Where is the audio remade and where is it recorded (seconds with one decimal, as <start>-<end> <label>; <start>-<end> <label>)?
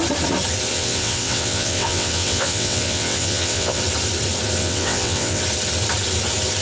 0.0-0.7 recorded; 0.7-3.8 remade; 3.8-4.6 recorded; 4.6-5.4 remade; 5.4-6.6 recorded